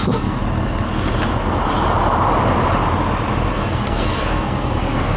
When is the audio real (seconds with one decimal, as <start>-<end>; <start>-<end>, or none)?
0.4-3.5

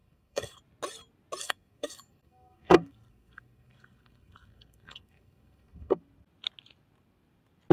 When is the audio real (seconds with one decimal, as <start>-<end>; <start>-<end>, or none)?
0.6-1.4; 6.0-7.7

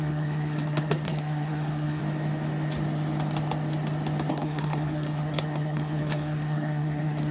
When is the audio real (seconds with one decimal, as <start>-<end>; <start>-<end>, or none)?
2.0-4.3

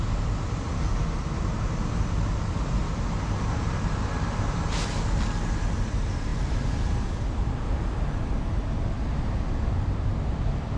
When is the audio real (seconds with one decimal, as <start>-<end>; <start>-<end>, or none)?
0.0-10.8